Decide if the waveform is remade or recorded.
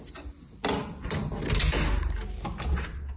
recorded